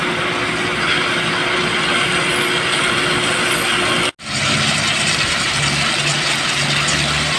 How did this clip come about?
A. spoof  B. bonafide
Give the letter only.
B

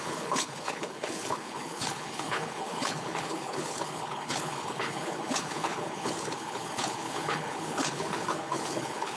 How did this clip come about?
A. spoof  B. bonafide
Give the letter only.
A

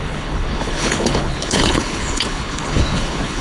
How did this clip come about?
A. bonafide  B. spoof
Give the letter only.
B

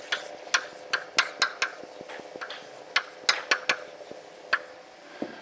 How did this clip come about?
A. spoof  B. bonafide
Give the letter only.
B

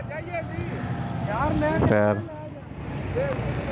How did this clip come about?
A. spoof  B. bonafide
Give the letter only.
B